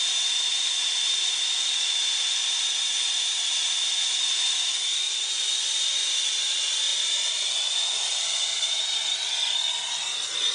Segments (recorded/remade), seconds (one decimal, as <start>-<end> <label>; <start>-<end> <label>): 0.0-10.5 recorded